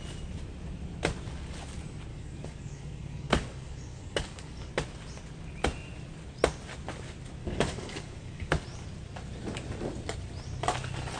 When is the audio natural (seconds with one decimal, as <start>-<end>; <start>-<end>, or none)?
0.0-2.1; 4.7-7.4; 8.5-11.2